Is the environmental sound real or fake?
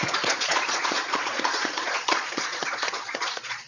fake